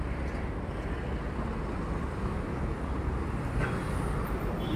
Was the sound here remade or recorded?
recorded